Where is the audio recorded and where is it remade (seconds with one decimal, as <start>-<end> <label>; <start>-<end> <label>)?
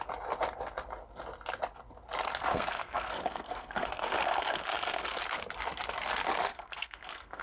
0.0-2.5 recorded; 2.5-5.2 remade; 5.2-6.5 recorded; 6.5-7.4 remade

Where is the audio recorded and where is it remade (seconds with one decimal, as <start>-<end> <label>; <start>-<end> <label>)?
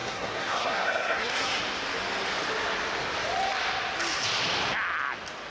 0.0-1.6 remade; 1.6-5.5 recorded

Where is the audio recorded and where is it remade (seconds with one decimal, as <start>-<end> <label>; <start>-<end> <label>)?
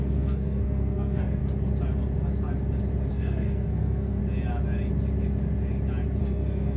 0.0-1.4 remade; 1.4-3.1 recorded; 3.1-4.2 remade; 4.2-6.2 recorded; 6.2-6.8 remade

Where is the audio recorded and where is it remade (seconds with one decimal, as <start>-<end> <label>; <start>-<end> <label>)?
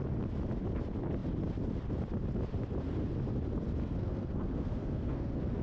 0.0-3.8 recorded; 3.8-5.6 remade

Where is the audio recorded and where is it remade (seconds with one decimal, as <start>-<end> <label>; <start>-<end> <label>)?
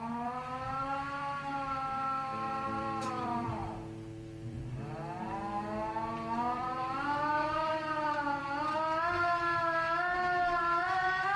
0.0-8.4 remade; 8.4-10.6 recorded; 10.6-11.4 remade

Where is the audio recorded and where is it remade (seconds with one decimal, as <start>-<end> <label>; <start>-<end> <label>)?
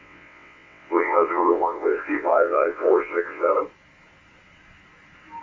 0.0-3.5 remade; 3.5-5.4 recorded